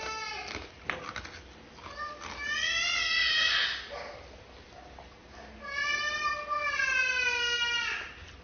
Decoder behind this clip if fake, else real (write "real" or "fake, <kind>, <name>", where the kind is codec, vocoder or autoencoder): real